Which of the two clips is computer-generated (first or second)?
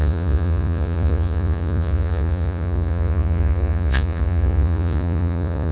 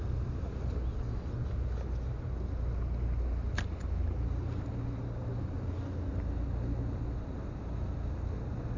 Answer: first